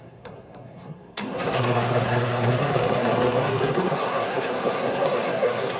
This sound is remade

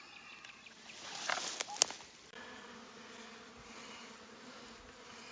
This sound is recorded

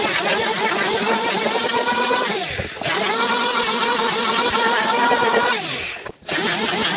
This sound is recorded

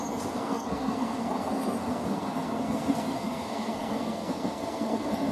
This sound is remade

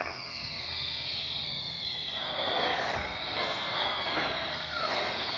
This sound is remade